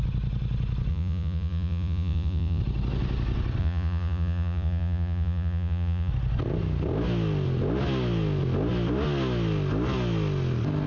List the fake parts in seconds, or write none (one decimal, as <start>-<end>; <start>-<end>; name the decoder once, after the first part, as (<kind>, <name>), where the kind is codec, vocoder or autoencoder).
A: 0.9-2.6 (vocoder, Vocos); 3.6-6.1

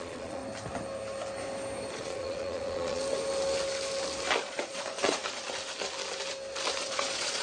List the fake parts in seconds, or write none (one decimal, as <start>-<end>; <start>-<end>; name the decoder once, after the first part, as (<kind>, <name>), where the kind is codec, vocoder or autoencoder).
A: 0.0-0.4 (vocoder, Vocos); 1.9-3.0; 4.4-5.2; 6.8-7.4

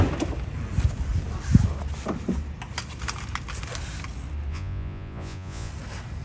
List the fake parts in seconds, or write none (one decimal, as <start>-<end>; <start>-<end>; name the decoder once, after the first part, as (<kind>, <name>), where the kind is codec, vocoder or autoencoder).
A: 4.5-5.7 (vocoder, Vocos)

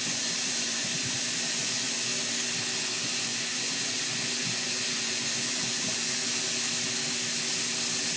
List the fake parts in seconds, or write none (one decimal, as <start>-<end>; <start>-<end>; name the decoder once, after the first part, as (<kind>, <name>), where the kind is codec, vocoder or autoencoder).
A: 0.0-2.1 (vocoder, Vocos); 2.8-6.2

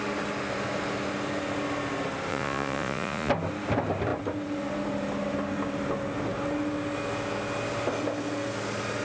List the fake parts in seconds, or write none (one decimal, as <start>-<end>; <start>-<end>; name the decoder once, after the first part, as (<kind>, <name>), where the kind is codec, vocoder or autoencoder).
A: 2.3-3.3 (vocoder, Vocos)